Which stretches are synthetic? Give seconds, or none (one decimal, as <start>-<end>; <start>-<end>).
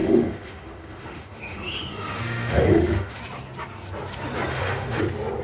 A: 0.0-3.2; 4.5-5.0